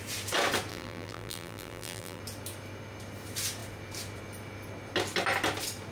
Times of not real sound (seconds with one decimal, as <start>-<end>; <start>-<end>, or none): 0.7-2.2